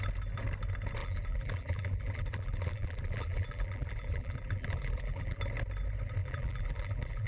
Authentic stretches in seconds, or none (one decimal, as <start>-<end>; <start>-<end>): 0.0-1.0; 5.4-6.2